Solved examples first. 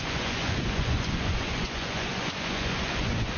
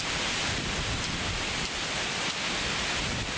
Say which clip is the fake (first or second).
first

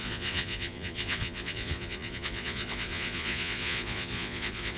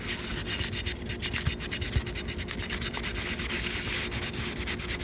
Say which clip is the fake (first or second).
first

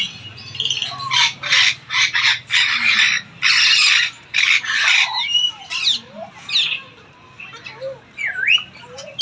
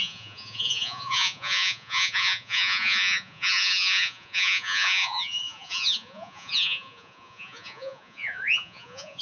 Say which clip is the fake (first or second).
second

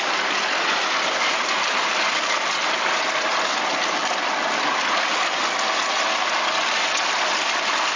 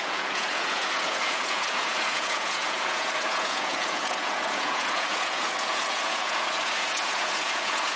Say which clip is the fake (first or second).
second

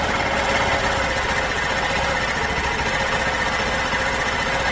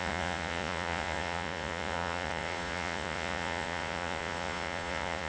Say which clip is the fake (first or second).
second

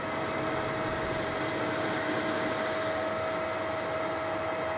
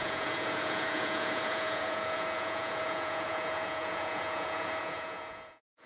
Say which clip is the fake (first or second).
second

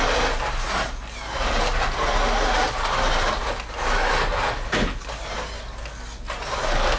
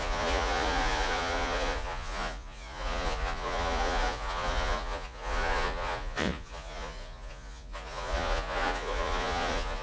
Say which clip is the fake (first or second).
second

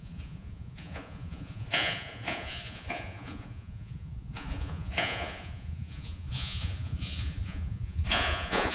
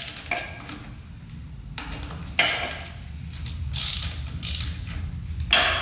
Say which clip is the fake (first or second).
first